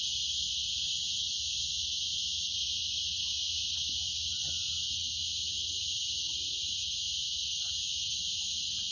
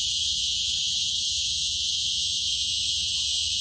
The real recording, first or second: first